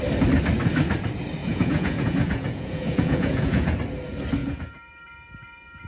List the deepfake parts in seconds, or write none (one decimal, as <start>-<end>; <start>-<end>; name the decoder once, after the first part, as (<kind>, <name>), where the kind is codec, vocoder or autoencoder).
1.4-3.8 (vocoder, Vocos); 4.4-4.9